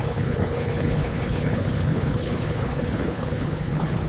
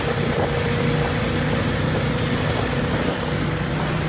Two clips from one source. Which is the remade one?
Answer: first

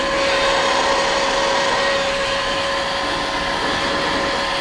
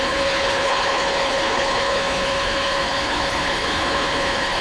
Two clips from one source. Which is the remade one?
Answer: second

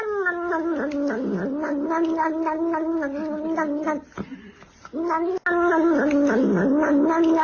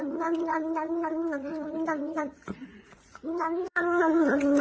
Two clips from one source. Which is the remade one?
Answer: second